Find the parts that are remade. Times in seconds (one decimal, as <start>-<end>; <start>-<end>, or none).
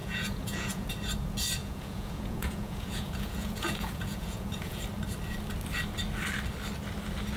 0.0-0.9; 1.6-4.8